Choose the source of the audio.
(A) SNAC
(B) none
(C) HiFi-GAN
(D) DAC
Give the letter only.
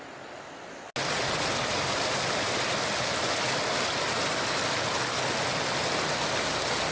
B